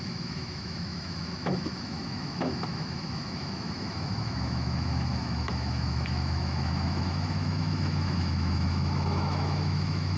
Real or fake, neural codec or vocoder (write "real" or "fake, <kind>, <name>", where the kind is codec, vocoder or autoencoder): fake, autoencoder, DAC-VAE